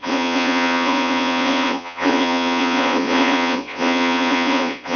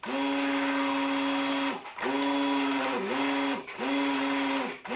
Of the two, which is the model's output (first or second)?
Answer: first